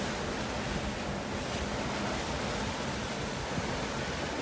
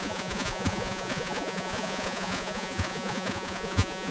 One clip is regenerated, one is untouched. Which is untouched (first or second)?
first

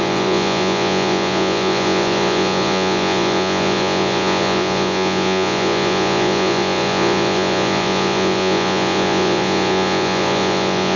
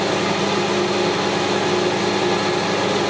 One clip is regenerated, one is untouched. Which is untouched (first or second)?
second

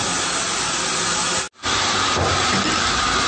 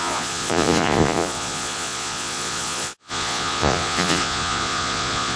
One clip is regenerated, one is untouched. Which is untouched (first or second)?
first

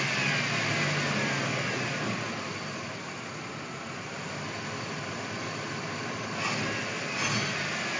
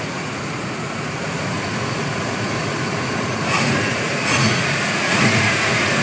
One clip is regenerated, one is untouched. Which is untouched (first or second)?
first